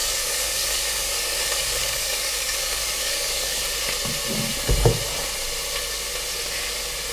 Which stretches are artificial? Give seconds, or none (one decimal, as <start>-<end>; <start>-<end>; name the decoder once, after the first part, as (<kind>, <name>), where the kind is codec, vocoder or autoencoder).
0.0-3.6 (codec, DAC)